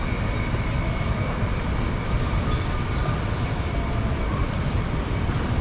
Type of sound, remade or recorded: remade